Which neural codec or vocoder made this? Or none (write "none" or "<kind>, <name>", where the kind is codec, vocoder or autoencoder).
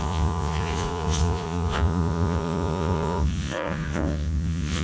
vocoder, Vocos